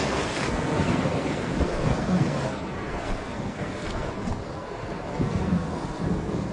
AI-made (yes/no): yes